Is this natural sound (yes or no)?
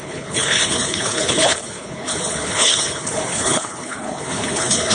no